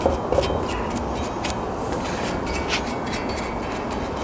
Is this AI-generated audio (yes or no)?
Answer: no